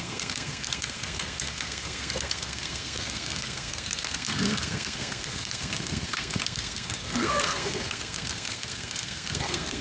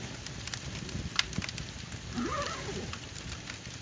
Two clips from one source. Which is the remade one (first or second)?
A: first